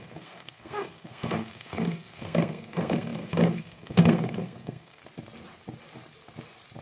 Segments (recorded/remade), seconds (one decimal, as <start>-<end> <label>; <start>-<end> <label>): 0.0-5.0 remade; 5.0-6.8 recorded